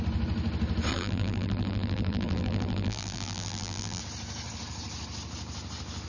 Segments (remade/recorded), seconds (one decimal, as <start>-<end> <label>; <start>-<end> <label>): 0.0-0.9 recorded; 0.9-4.0 remade; 4.0-6.1 recorded